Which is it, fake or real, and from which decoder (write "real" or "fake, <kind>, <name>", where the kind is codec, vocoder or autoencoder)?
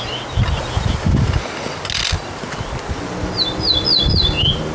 real